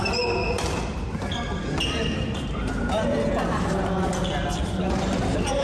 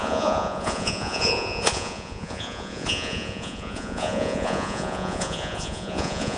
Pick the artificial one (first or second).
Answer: second